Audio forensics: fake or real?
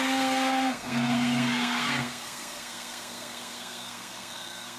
fake